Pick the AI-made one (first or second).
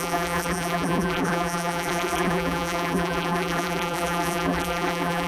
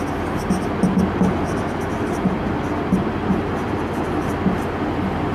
first